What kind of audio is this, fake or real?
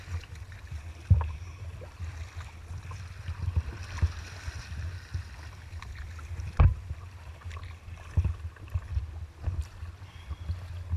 real